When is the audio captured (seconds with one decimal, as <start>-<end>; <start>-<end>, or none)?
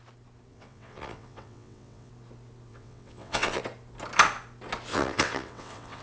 0.0-0.5; 2.1-2.7; 3.6-4.9